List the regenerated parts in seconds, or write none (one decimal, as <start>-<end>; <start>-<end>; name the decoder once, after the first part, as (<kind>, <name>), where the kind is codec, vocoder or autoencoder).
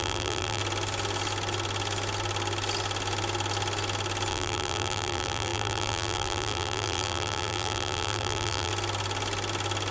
0.0-0.6 (vocoder, BigVGAN v2); 4.3-8.7